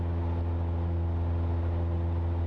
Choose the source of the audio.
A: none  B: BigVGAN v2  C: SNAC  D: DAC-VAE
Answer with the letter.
A